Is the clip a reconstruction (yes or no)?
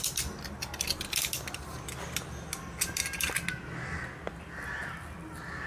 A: no